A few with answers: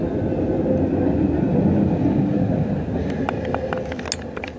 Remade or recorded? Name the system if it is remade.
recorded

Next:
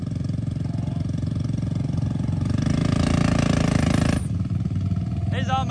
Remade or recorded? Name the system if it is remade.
recorded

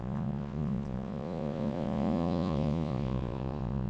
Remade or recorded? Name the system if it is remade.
remade, vocoder, Vocos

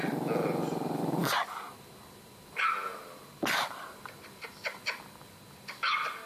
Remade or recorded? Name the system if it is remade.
recorded